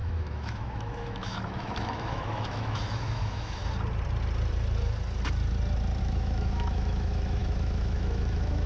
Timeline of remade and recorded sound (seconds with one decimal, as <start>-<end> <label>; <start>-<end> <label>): 0.0-3.6 remade; 3.6-6.0 recorded; 6.0-8.7 remade